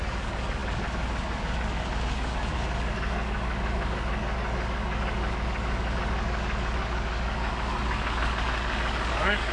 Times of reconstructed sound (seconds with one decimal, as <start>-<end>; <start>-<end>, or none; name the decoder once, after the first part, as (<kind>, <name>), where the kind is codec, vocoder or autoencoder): 0.0-9.5 (codec, DAC)